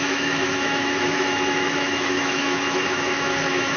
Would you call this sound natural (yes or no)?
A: no